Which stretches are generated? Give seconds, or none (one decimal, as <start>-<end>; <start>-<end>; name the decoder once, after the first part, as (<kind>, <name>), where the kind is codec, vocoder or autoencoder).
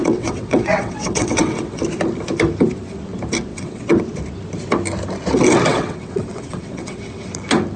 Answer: 0.0-1.8 (vocoder, WaveNeXt); 3.5-4.0; 5.7-7.3